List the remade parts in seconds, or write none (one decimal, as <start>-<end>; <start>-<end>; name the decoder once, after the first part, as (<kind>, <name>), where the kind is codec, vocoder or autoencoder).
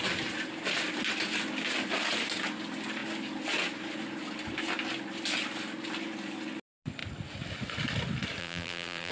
8.4-9.1 (vocoder, BigVGAN v2)